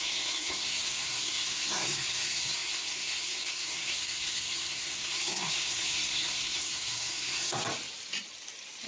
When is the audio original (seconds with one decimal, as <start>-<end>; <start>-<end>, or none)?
7.6-8.9